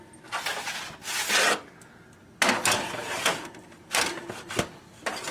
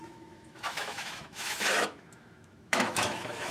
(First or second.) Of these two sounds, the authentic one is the first